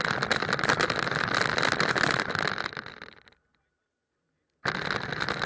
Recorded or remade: recorded